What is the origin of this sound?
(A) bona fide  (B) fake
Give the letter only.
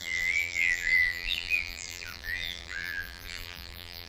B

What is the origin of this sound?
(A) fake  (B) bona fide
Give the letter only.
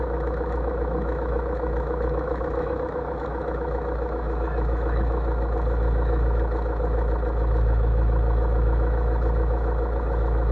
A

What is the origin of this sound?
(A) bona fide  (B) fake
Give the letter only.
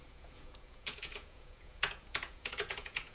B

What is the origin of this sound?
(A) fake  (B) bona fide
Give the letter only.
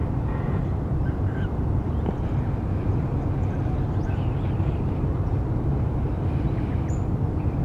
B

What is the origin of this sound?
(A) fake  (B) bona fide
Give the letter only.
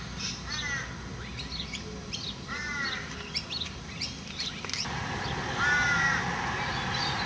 B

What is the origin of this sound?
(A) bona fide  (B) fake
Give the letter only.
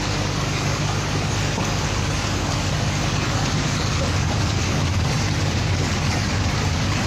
B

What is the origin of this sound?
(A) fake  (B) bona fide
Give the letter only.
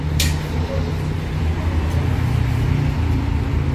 B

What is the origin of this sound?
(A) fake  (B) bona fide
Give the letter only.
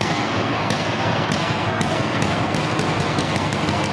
A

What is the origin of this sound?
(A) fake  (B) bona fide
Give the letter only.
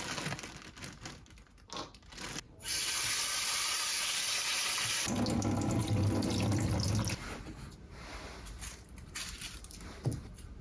B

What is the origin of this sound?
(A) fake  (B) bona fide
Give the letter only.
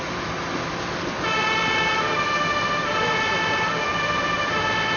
A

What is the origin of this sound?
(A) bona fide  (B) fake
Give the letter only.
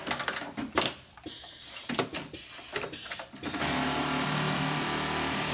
A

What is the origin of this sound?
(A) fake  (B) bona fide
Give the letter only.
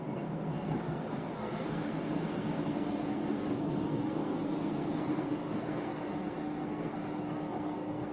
A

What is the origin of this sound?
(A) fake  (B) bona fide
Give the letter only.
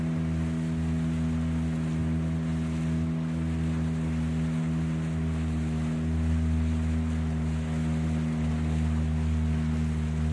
B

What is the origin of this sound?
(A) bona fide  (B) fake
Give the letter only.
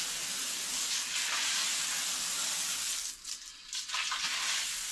A